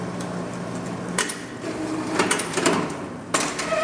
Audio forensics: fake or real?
real